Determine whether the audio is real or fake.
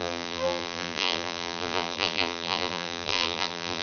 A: fake